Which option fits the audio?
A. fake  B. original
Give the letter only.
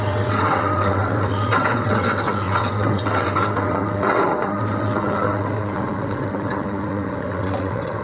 A